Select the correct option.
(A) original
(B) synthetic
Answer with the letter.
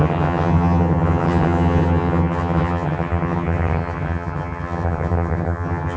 B